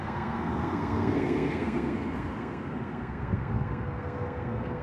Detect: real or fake fake